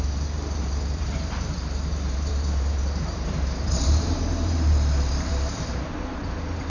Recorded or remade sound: remade